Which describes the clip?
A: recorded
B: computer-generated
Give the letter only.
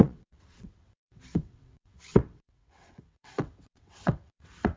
B